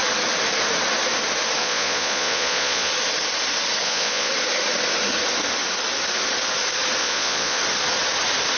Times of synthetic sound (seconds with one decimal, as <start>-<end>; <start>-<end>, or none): 1.6-2.9; 3.8-4.3; 7.0-7.6